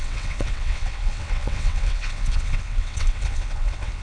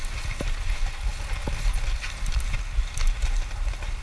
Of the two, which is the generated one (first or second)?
first